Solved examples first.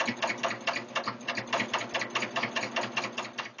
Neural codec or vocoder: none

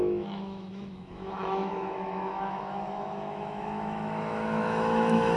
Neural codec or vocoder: autoencoder, DAC-VAE